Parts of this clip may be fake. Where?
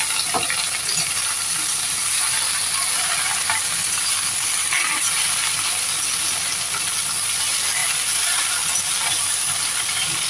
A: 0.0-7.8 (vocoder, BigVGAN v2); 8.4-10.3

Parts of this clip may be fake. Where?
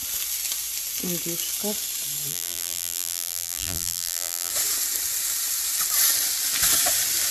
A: 2.3-4.5 (vocoder, BigVGAN v2)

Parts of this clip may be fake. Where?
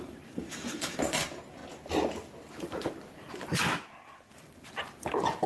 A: 0.0-1.6 (vocoder, BigVGAN v2); 2.5-5.5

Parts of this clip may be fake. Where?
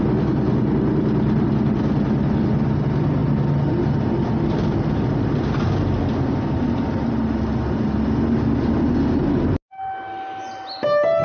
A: none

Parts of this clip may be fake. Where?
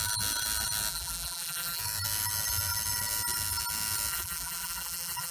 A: 0.9-1.8 (vocoder, BigVGAN v2); 4.1-5.3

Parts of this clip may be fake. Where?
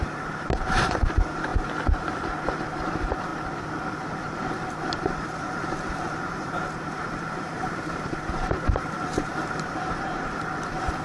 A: 0.0-1.5 (vocoder, BigVGAN v2); 2.7-3.3; 4.2-11.0